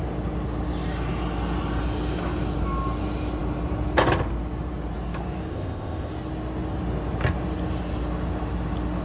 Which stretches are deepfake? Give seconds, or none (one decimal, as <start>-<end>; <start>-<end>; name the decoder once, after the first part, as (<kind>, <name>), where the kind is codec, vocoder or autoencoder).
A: 5.5-6.1 (codec, ZipCodec)